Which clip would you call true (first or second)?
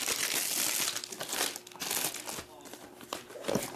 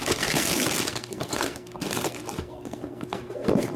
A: first